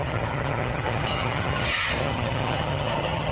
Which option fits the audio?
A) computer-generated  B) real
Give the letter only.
A